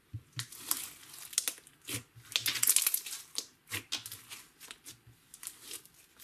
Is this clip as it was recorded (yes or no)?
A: yes